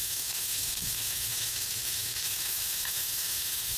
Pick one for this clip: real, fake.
fake